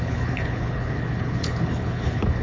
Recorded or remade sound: remade